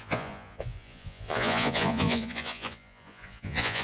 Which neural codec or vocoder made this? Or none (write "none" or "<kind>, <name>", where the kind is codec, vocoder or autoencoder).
vocoder, Vocos